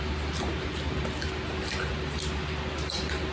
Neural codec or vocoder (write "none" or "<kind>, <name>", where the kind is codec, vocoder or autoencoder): none